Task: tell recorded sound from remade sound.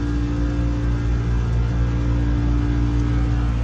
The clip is recorded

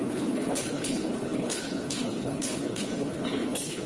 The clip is remade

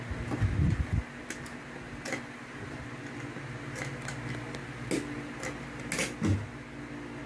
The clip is recorded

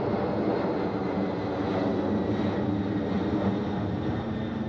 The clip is recorded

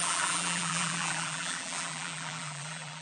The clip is remade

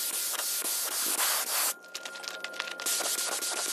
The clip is recorded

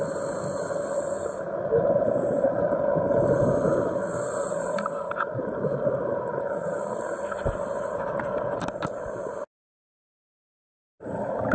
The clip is recorded